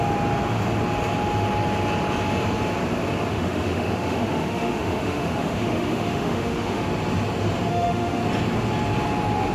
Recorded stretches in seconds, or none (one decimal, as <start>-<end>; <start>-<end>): 0.0-3.3; 6.8-7.7; 8.2-9.5